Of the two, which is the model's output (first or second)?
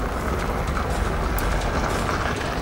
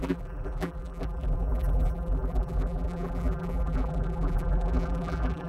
second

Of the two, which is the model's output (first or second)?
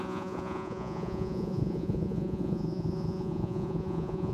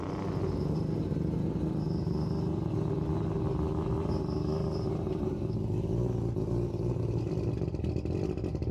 first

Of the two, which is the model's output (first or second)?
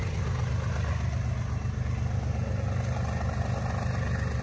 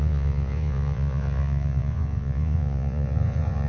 second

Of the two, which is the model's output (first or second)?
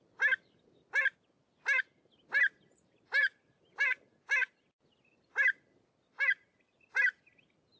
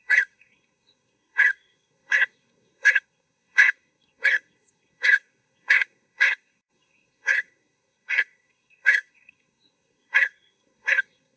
second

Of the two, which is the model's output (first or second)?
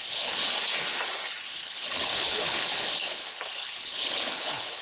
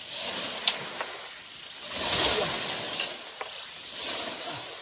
first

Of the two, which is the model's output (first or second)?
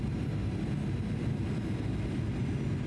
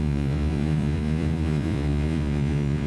second